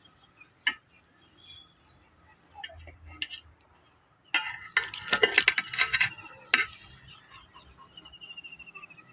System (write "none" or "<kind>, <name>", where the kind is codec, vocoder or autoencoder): none